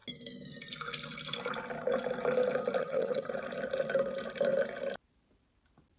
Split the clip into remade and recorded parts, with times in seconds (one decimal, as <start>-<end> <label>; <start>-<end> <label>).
0.0-2.8 recorded; 2.8-3.3 remade; 3.3-6.0 recorded